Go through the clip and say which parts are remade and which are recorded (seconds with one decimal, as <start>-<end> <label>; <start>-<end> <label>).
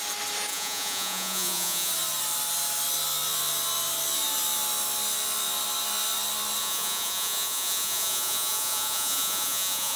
0.0-0.5 recorded; 0.5-1.9 remade; 1.9-6.6 recorded; 6.6-10.0 remade